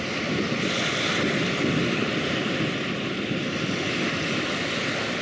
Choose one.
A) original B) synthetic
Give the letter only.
A